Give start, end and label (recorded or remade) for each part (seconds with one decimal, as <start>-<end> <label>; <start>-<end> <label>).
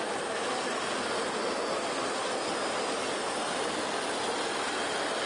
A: 0.0-5.3 recorded